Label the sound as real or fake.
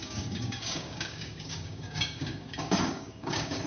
fake